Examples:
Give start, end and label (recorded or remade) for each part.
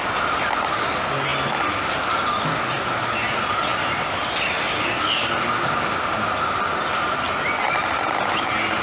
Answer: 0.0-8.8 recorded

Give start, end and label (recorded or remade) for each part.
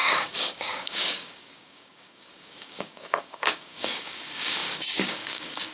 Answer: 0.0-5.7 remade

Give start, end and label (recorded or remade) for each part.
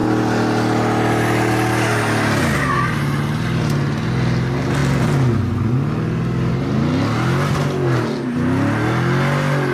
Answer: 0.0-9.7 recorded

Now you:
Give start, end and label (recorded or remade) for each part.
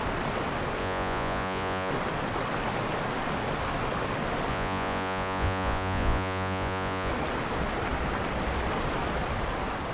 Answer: 0.0-0.8 recorded; 0.8-1.9 remade; 1.9-4.5 recorded; 4.5-7.1 remade; 7.1-9.9 recorded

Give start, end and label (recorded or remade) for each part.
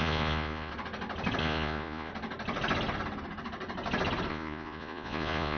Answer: 0.0-0.7 remade; 0.7-1.4 recorded; 1.4-2.1 remade; 2.1-4.3 recorded; 4.3-5.6 remade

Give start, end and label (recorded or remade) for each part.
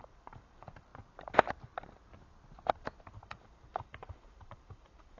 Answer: 0.0-0.9 remade; 0.9-3.2 recorded; 3.2-5.2 remade